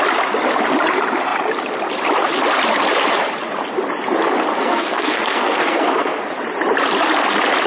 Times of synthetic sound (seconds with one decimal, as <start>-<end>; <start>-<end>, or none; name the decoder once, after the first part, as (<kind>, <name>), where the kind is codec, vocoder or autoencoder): 4.5-6.3 (codec, SNAC)